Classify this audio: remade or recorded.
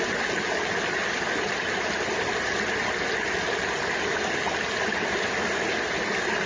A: recorded